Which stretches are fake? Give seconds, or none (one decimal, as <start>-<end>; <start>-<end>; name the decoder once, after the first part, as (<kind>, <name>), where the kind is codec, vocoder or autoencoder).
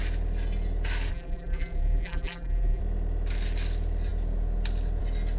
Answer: 1.1-2.8 (vocoder, BigVGAN v2)